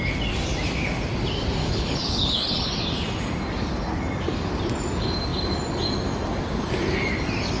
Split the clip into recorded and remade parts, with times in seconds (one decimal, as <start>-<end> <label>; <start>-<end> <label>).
0.0-1.6 recorded; 1.6-2.7 remade; 2.7-7.6 recorded